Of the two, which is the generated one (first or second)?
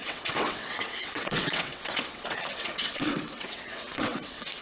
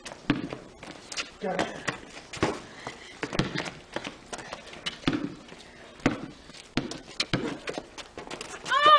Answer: first